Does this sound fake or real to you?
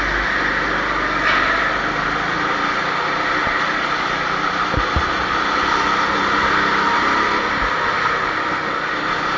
real